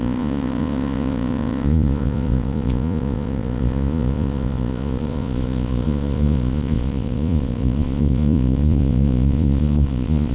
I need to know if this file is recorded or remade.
remade